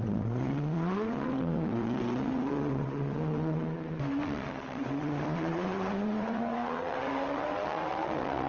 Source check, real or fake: fake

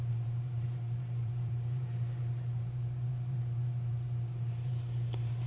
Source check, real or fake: fake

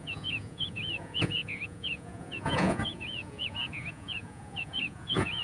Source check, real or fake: fake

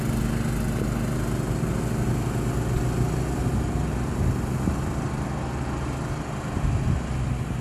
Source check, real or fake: real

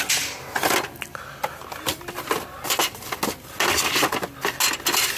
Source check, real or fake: real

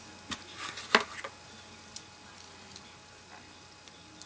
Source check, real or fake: real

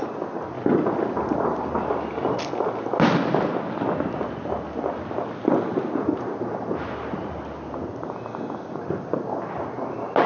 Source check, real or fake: real